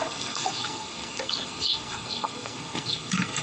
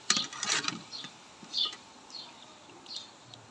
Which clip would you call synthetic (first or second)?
first